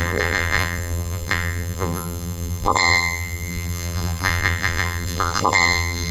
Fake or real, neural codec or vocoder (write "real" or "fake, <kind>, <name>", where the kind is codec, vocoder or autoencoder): fake, vocoder, BigVGAN v2